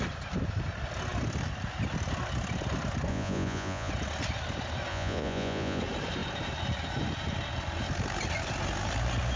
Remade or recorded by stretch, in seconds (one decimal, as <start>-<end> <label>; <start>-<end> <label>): 0.0-3.1 recorded; 3.1-3.9 remade; 3.9-4.9 recorded; 4.9-5.8 remade; 5.8-9.4 recorded